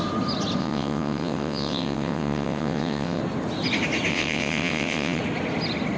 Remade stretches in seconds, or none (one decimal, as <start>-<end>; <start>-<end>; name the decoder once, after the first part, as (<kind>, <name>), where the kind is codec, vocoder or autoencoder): 0.6-3.2 (vocoder, WaveNeXt); 4.1-5.2